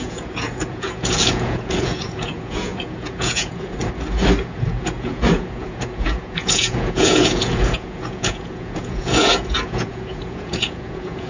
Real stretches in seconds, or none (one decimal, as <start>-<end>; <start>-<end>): 3.8-4.4

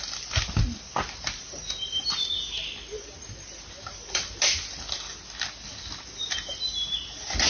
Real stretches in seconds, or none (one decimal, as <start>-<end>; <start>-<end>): 0.0-7.5

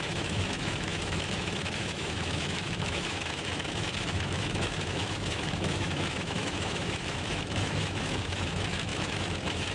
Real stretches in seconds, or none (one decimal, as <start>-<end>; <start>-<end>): none

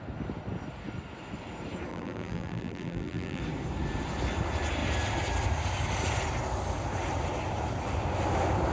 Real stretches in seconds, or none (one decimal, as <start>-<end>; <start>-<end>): 0.0-1.9; 3.4-8.7

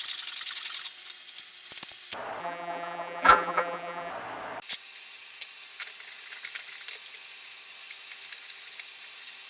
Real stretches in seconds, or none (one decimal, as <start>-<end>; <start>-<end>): 0.0-2.4; 4.1-9.5

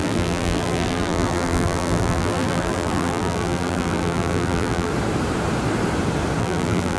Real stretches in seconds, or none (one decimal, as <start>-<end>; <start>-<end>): 4.9-6.4

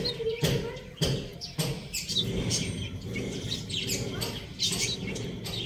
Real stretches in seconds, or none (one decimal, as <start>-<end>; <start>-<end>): 0.0-5.7